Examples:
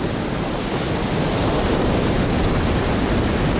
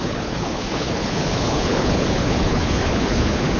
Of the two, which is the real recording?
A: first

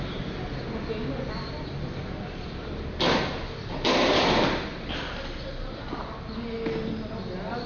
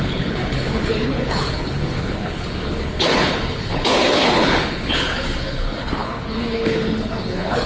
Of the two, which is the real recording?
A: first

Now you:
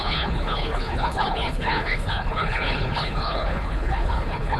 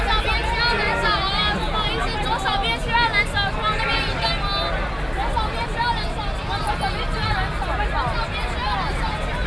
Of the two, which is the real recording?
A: second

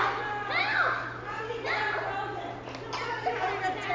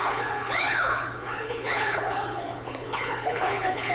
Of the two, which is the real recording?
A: first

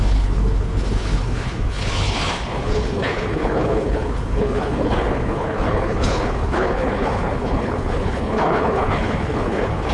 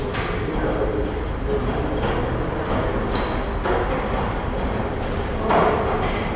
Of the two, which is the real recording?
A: second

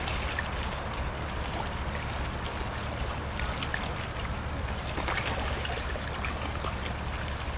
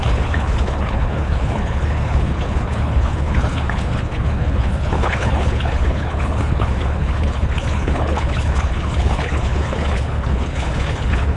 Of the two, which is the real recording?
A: first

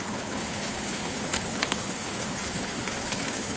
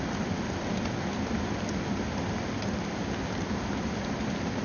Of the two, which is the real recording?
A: second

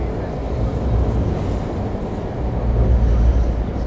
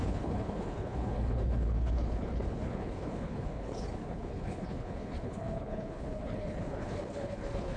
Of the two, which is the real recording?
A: first